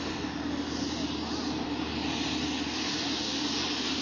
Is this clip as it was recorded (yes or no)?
yes